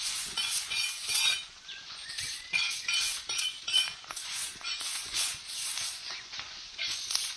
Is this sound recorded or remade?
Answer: remade